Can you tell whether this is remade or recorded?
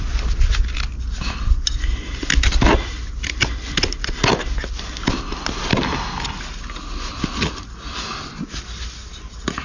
recorded